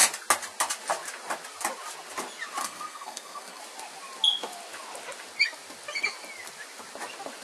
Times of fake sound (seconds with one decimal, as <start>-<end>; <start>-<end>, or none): 2.6-3.6